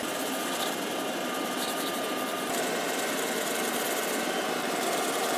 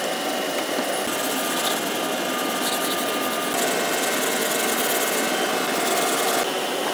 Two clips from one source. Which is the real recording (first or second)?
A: second